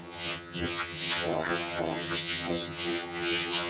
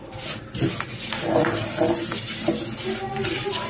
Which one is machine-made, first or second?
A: first